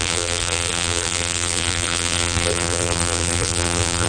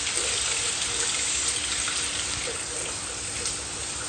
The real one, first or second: second